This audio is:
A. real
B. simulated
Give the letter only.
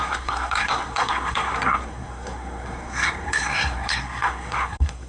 B